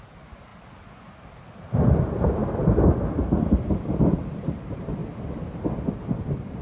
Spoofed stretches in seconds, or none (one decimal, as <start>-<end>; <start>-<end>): 0.0-0.5; 2.0-2.4; 4.3-5.0; 5.8-6.6

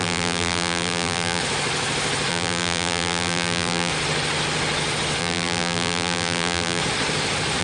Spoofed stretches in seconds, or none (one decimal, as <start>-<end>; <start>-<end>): 0.0-1.4; 2.3-3.9; 5.2-6.8

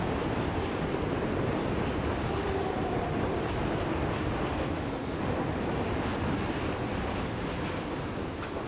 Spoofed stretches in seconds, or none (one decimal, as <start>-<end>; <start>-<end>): none

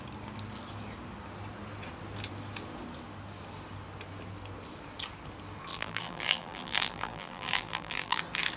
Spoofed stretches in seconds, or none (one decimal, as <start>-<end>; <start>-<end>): 5.7-8.2

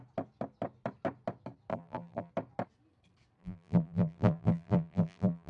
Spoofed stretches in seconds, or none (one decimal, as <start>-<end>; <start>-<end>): 1.7-2.3; 3.4-5.5

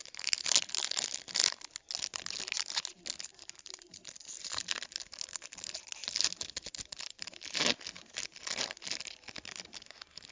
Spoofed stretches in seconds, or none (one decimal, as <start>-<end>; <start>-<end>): none